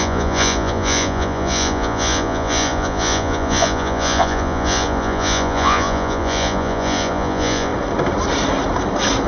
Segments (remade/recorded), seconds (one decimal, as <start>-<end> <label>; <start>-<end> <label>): 0.0-7.7 remade; 7.7-9.3 recorded